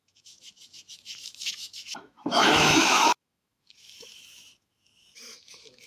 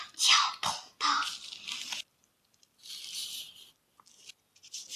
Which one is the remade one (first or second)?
first